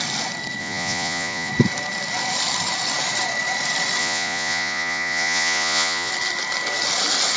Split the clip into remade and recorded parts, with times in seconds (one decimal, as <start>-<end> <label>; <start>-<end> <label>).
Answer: 0.0-0.6 recorded; 0.6-1.5 remade; 1.5-4.0 recorded; 4.0-6.1 remade; 6.1-7.4 recorded